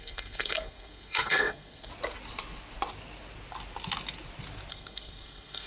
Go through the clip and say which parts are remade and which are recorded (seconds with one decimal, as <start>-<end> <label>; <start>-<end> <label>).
0.0-1.9 remade; 1.9-4.7 recorded; 4.7-5.7 remade